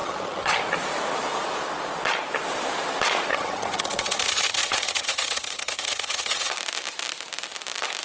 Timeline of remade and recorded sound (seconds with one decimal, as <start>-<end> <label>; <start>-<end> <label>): 0.0-0.6 remade; 0.6-3.3 recorded; 3.3-6.5 remade; 6.5-8.0 recorded